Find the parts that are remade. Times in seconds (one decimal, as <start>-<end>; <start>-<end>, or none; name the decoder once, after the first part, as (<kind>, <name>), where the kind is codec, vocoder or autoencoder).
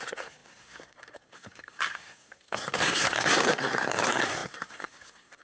0.0-5.4 (codec, SNAC)